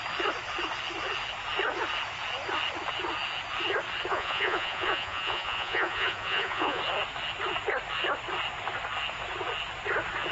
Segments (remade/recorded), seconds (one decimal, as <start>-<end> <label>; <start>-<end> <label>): 0.0-4.1 recorded; 4.1-6.8 remade; 6.8-10.3 recorded